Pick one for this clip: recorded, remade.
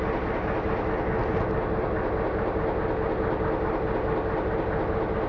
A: recorded